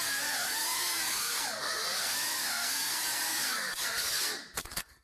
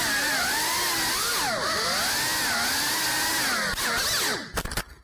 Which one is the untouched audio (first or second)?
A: second